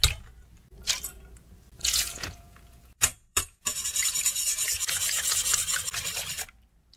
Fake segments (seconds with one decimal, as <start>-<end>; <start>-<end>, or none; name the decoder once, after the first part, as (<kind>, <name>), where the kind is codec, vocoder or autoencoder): 1.8-5.8 (vocoder, Vocos)